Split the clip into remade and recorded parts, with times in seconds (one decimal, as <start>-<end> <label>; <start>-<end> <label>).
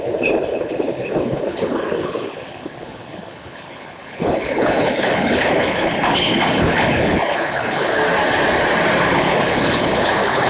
0.0-8.0 remade; 8.0-9.1 recorded; 9.1-10.5 remade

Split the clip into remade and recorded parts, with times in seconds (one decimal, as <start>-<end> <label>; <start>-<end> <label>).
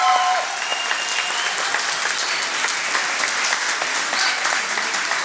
0.0-5.2 recorded